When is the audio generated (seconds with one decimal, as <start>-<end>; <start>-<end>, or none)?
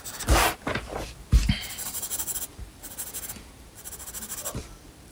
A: none